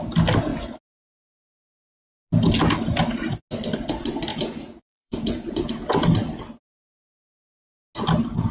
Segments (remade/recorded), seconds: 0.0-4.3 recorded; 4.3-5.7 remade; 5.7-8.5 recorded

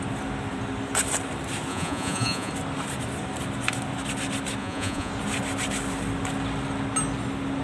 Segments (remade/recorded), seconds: 0.0-1.7 recorded; 1.7-2.5 remade; 2.5-4.6 recorded; 4.6-5.1 remade; 5.1-7.6 recorded